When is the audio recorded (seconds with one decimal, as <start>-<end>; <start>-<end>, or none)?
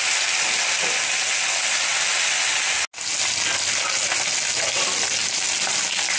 0.0-6.2